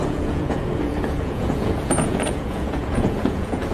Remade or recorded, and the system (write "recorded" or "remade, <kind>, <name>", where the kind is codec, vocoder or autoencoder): remade, vocoder, Vocos